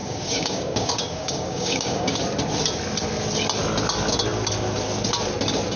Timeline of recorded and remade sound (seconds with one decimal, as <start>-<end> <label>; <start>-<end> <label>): 0.0-2.2 remade; 2.2-5.8 recorded